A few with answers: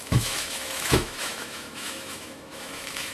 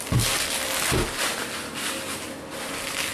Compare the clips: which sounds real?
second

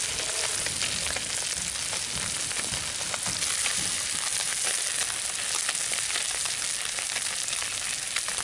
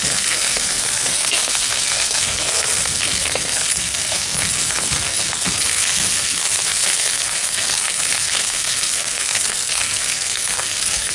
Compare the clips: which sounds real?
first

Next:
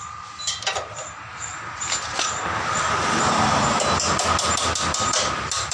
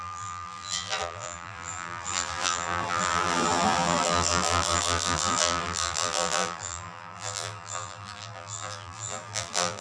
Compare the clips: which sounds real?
first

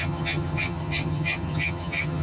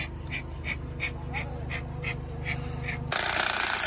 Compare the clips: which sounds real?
second